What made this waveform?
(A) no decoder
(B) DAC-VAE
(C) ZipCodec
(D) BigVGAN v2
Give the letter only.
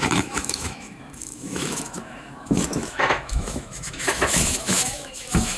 B